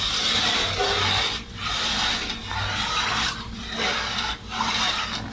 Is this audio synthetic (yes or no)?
no